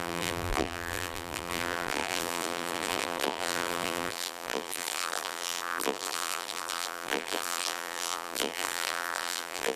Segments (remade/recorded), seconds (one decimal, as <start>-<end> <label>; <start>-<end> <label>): 0.0-9.8 remade